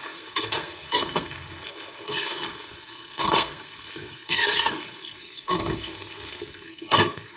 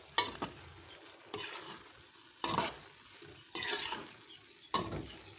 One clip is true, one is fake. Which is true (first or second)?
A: second